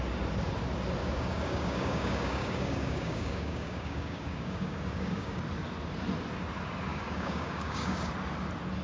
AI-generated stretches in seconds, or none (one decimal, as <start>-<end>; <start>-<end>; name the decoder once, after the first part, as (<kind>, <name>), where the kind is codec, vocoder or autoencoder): 1.0-5.4 (codec, DAC); 6.9-8.1